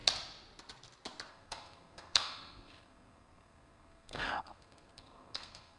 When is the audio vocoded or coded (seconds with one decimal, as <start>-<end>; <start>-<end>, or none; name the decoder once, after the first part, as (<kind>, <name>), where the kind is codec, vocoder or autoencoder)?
1.3-5.8 (codec, SNAC)